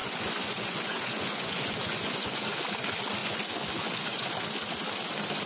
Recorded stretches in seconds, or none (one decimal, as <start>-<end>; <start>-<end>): 2.5-3.2; 4.3-5.5